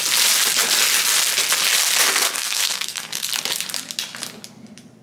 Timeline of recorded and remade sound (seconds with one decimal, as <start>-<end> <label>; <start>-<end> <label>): 0.0-2.1 recorded; 2.1-3.3 remade; 3.3-5.0 recorded